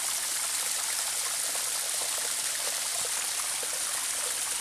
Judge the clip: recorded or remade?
recorded